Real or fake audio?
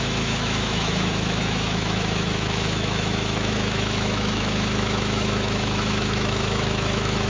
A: fake